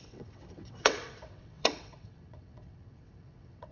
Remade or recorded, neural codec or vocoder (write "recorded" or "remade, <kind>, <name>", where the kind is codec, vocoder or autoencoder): remade, vocoder, WaveNeXt